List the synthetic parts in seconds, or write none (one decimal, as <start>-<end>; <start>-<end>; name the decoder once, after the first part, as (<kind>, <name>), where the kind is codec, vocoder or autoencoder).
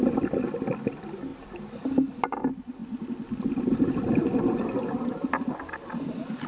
none